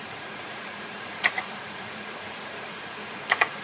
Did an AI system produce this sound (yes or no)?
yes